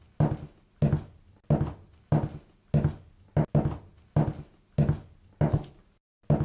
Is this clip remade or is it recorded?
recorded